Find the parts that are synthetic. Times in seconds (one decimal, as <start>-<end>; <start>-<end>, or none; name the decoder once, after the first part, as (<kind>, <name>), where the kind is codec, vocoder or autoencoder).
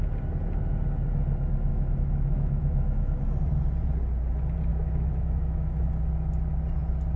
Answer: 1.7-3.2 (autoencoder, DAC-VAE); 4.7-5.9